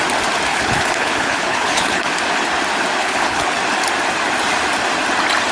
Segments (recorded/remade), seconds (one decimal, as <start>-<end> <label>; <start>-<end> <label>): 0.0-0.5 recorded; 0.5-2.1 remade; 2.1-3.0 recorded; 3.0-3.6 remade; 3.6-5.5 recorded